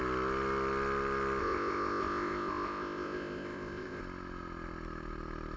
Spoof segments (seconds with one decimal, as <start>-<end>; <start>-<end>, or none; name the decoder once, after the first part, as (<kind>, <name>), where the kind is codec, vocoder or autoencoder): 1.4-4.0 (codec, ZipCodec)